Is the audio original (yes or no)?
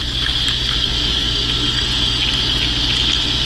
yes